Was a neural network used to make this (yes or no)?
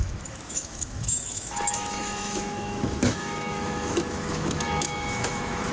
yes